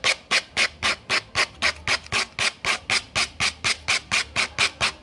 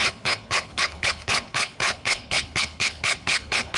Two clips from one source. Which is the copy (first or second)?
second